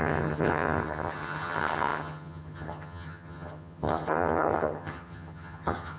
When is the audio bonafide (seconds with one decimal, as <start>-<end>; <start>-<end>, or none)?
none